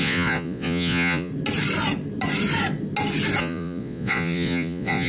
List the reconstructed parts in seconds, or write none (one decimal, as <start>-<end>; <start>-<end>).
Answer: 0.0-1.3; 3.4-5.1